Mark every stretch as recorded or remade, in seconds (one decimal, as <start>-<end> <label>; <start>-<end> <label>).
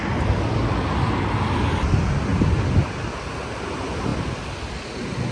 0.0-4.1 recorded; 4.1-4.7 remade; 4.7-5.3 recorded